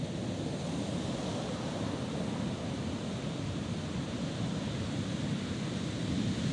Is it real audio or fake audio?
real